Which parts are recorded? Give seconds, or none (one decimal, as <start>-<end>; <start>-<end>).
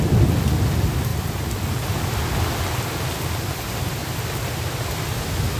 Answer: 0.0-5.6